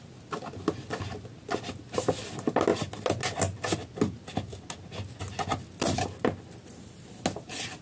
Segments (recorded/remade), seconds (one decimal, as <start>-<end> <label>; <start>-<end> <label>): 0.0-7.8 recorded